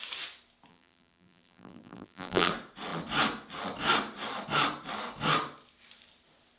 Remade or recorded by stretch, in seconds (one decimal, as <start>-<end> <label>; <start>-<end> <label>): 0.0-0.7 recorded; 0.7-2.5 remade; 2.5-6.6 recorded